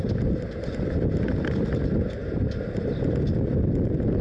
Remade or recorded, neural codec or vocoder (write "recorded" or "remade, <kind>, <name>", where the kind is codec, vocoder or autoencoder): recorded